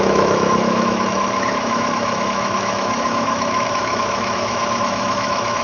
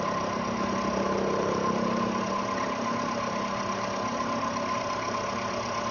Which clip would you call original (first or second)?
second